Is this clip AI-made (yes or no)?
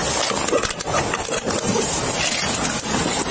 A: no